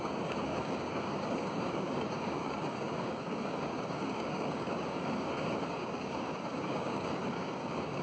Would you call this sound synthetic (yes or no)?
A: yes